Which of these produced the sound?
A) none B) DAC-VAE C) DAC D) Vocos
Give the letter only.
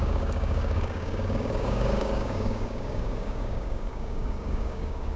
C